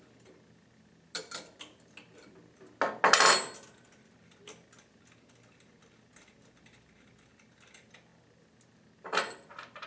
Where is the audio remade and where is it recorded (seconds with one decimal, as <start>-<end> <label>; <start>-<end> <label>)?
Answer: 0.0-9.9 recorded